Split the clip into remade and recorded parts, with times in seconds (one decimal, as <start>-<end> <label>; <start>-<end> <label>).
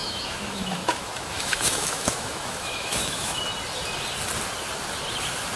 0.0-3.4 remade; 3.4-5.6 recorded